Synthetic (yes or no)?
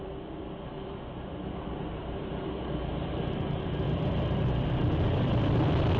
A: yes